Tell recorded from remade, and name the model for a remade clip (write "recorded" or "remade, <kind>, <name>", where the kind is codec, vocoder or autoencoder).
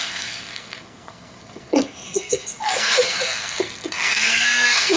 remade, codec, SNAC